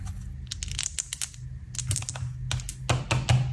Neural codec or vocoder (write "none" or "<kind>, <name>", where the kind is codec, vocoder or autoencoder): none